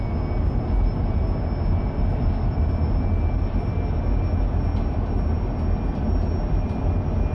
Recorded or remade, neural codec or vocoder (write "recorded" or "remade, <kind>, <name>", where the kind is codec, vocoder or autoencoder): recorded